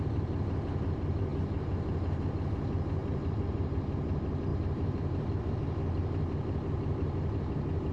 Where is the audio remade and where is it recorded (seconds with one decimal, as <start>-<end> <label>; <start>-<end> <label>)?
0.0-4.5 recorded; 4.5-5.5 remade; 5.5-7.9 recorded